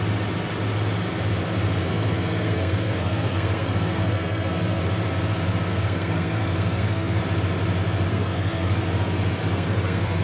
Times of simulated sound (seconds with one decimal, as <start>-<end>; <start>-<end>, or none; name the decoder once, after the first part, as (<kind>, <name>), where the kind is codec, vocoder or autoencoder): 1.9-4.8 (codec, SNAC); 5.7-7.2; 8.1-8.8; 9.5-10.2